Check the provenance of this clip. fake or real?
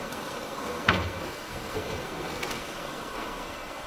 fake